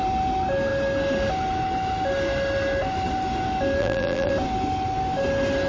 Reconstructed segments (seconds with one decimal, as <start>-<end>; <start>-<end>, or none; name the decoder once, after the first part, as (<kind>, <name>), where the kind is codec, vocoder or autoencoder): 3.8-4.3 (vocoder, BigVGAN v2)